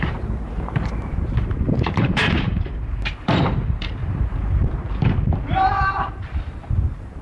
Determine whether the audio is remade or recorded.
remade